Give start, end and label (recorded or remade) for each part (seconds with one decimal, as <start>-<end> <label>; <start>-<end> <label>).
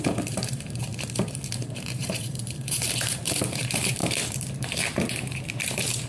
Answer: 0.0-0.9 remade; 0.9-1.6 recorded; 1.6-6.1 remade